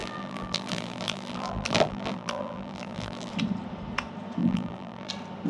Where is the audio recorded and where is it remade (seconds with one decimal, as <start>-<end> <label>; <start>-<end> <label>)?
0.0-3.3 remade; 3.3-4.4 recorded; 4.4-5.1 remade; 5.1-5.5 recorded